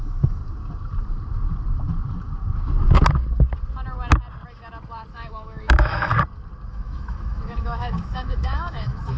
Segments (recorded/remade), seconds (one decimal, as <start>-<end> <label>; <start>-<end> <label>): 0.0-0.4 remade; 0.4-5.1 recorded; 5.1-6.1 remade; 6.1-6.7 recorded; 6.7-9.2 remade

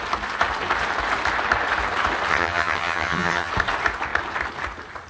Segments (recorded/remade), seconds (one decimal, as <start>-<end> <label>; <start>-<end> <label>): 0.0-2.3 recorded; 2.3-3.5 remade; 3.5-5.1 recorded